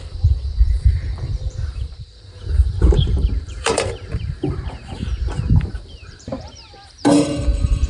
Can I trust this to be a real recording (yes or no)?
no